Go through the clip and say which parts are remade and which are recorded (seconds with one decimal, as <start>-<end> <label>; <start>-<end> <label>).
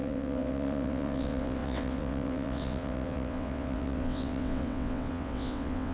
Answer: 0.0-5.9 remade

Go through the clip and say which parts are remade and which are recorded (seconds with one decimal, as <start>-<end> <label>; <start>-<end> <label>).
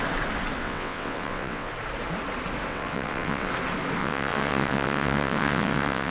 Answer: 0.0-0.6 recorded; 0.6-1.7 remade; 1.7-2.7 recorded; 2.7-3.5 remade; 3.5-4.0 recorded; 4.0-6.1 remade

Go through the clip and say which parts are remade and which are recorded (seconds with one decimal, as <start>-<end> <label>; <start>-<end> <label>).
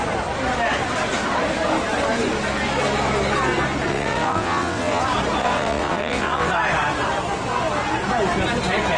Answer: 0.0-3.9 recorded; 3.9-5.0 remade; 5.0-5.4 recorded; 5.4-6.5 remade; 6.5-9.0 recorded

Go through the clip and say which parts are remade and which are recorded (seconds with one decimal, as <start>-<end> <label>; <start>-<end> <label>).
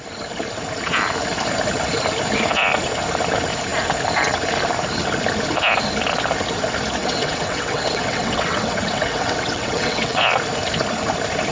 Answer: 0.0-7.0 recorded; 7.0-10.2 remade; 10.2-11.5 recorded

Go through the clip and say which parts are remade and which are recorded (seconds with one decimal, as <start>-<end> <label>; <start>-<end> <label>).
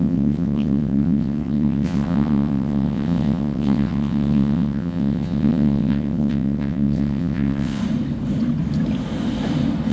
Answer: 0.0-7.8 remade; 7.8-9.9 recorded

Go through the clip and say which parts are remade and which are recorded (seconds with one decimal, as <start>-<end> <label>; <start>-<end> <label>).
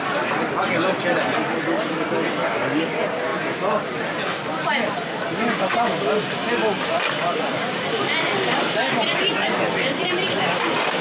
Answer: 0.0-11.0 recorded